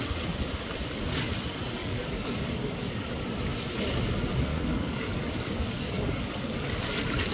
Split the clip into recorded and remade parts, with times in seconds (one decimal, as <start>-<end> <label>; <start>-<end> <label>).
0.0-1.8 recorded; 1.8-3.1 remade; 3.1-4.5 recorded; 4.5-6.7 remade; 6.7-7.3 recorded